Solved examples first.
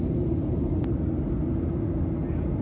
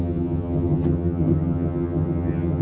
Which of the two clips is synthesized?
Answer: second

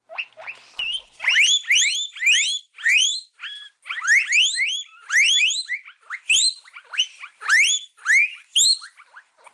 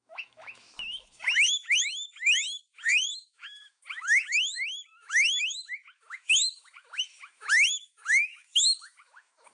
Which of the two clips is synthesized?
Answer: second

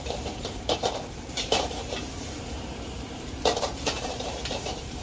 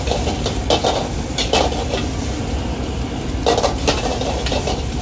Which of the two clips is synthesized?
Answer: first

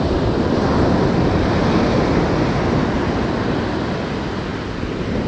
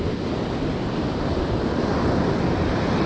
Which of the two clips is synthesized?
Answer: second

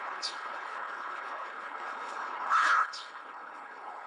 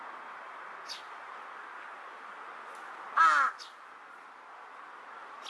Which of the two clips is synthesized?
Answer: first